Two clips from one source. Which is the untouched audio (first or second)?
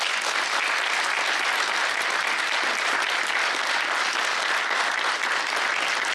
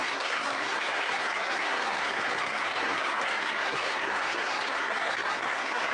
first